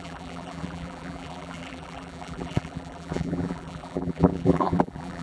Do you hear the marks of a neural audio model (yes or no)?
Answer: yes